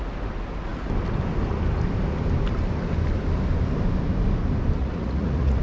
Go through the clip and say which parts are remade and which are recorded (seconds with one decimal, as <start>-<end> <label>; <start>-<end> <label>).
0.0-4.8 recorded; 4.8-5.6 remade